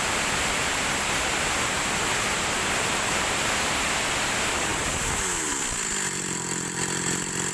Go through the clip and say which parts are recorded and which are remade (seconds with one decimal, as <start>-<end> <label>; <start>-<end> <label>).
0.0-7.5 recorded